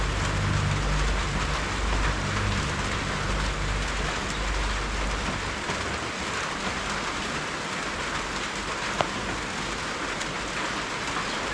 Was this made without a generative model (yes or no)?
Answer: yes